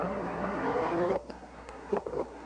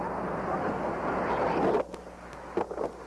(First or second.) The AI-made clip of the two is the first